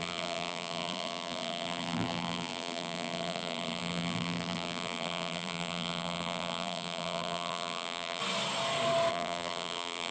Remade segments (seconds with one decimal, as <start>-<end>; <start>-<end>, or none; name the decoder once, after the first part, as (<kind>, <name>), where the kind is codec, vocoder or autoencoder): 0.0-8.2 (vocoder, BigVGAN v2); 9.1-10.1